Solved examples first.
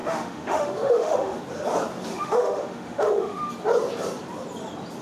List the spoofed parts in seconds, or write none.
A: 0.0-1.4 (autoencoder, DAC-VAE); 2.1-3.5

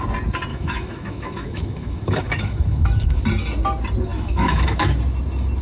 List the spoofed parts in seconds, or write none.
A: 0.5-3.2 (autoencoder, DAC-VAE); 4.1-5.0

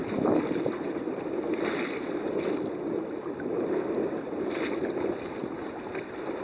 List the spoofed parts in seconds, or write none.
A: none

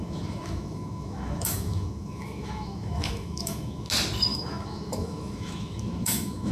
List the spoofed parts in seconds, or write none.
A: 0.0-3.9 (autoencoder, DAC-VAE); 4.3-6.5

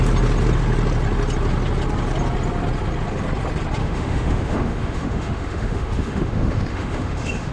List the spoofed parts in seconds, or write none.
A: 3.8-7.5 (autoencoder, DAC-VAE)

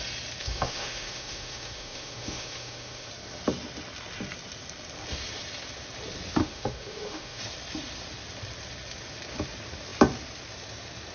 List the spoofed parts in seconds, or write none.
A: 0.4-3.1 (autoencoder, DAC-VAE); 6.4-7.4